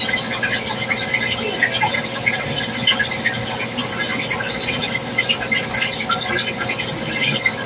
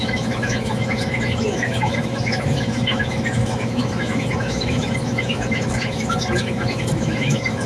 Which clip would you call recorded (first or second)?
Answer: first